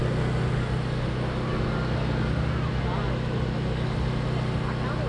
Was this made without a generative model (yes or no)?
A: yes